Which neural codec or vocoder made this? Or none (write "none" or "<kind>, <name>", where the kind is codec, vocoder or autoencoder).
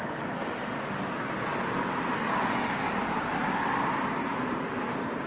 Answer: none